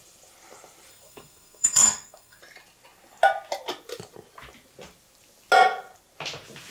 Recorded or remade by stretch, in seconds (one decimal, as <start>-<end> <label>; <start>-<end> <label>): 0.0-0.9 recorded; 0.9-2.4 remade; 2.4-6.7 recorded